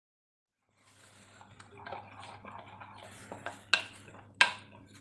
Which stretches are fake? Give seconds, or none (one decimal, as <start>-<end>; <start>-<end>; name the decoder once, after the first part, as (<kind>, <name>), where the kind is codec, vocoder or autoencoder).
none